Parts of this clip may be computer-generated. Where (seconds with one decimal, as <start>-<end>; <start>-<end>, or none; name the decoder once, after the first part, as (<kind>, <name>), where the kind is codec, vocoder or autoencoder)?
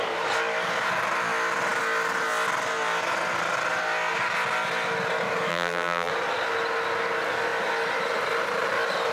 5.5-6.1 (vocoder, BigVGAN v2)